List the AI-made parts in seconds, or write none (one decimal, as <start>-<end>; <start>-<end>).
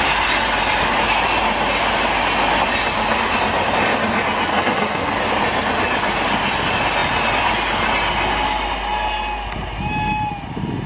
4.5-5.1